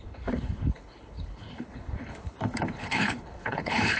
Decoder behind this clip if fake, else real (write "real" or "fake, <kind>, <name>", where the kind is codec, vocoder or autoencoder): fake, codec, HILCodec